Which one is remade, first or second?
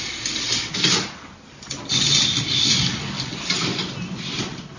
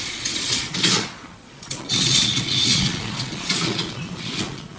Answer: second